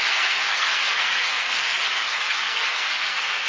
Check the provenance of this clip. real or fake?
fake